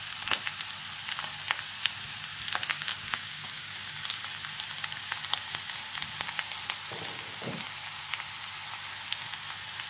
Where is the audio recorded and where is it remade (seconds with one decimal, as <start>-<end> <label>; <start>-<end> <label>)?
0.0-2.7 recorded; 2.7-3.9 remade; 3.9-9.9 recorded